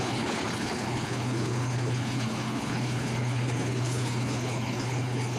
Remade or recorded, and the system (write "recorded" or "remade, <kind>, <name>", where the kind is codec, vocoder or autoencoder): remade, codec, HILCodec